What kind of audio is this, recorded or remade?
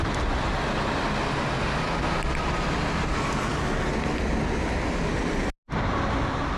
recorded